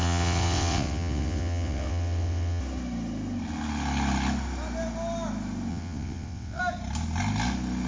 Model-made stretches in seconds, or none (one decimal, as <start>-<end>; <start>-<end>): 0.0-2.6; 5.7-6.6